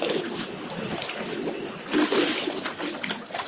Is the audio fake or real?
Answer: real